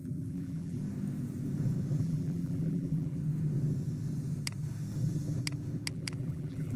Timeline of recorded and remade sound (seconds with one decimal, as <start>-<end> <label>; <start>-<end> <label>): 0.0-0.8 remade; 0.8-2.0 recorded; 2.0-3.2 remade; 3.2-5.9 recorded; 5.9-6.8 remade